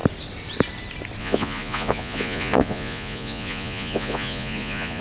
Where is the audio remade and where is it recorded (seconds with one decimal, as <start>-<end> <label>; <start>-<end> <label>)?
0.0-1.2 recorded; 1.2-5.0 remade